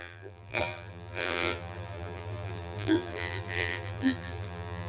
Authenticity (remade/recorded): remade